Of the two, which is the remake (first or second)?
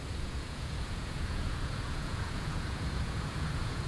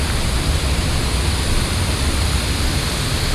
first